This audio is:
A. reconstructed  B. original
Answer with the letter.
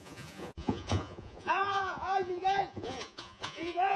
A